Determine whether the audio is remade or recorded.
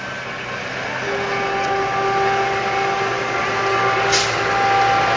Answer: recorded